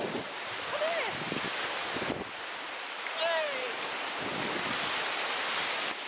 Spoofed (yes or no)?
no